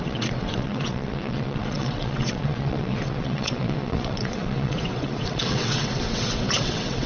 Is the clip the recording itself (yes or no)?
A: no